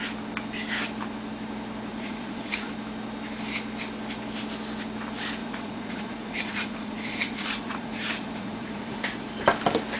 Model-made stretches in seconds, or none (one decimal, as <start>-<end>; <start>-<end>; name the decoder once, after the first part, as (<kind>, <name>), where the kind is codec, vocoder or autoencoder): 1.9-2.7 (vocoder, Vocos); 5.4-9.3